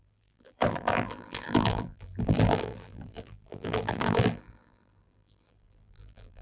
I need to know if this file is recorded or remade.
remade